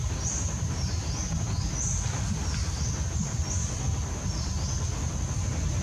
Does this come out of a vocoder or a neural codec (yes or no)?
no